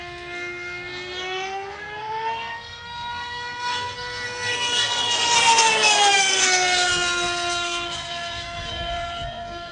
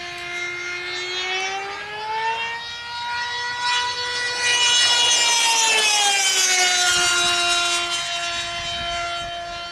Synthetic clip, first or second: first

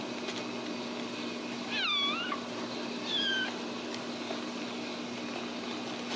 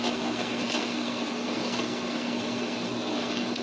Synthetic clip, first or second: second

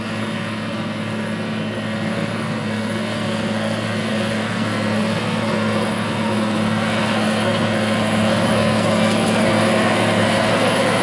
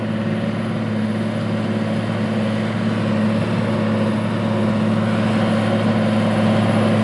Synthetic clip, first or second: first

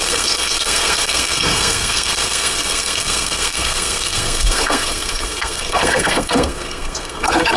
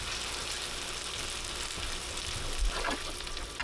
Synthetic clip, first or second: first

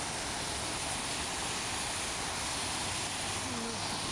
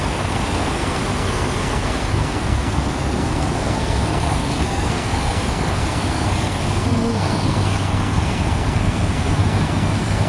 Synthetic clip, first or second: second